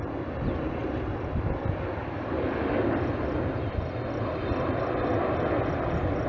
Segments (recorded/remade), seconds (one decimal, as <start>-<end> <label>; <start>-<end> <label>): 0.0-2.8 remade; 2.8-6.3 recorded